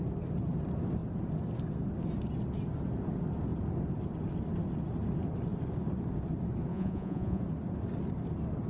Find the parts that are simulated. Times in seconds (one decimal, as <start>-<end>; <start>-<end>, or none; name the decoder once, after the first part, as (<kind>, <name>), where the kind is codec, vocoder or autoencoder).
6.7-7.4 (vocoder, Vocos)